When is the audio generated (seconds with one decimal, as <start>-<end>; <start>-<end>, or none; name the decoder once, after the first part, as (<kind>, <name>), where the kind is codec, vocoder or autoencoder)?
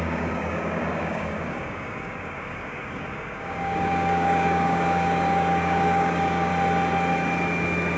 0.0-6.5 (codec, DAC)